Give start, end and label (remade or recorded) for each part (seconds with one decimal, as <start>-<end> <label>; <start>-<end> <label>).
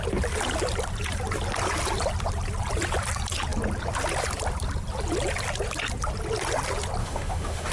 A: 0.0-7.0 recorded; 7.0-7.7 remade